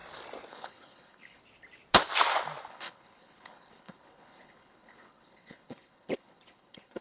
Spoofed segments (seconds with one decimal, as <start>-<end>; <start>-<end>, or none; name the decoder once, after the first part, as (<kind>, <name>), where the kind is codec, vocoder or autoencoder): 0.5-1.4 (codec, HILCodec); 2.7-7.0